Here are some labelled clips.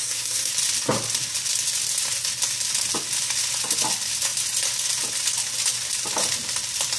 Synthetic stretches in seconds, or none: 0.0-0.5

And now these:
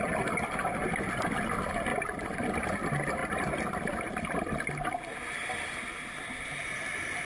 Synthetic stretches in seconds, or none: none

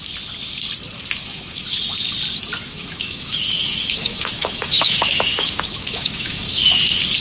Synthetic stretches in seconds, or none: 1.2-1.8; 2.6-6.8

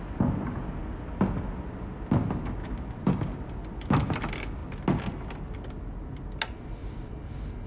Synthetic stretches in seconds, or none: 2.6-3.2; 6.8-7.3

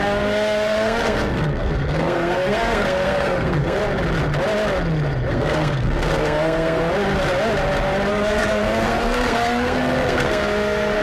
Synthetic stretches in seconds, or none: 0.0-3.8; 5.3-6.8; 8.1-11.0

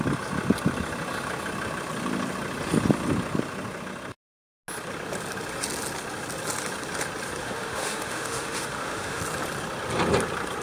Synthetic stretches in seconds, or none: 7.4-9.2

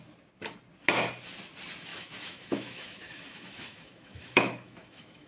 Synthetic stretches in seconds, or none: 1.9-5.3